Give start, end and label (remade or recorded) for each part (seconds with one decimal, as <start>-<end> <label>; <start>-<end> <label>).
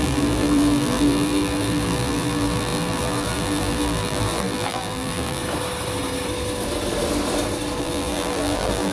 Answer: 0.0-5.4 remade; 5.4-7.8 recorded; 7.8-8.9 remade